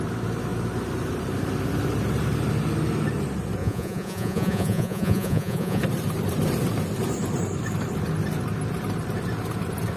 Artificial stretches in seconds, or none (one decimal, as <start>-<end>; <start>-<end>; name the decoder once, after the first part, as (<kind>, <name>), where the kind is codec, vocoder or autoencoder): 3.6-5.8 (vocoder, Vocos)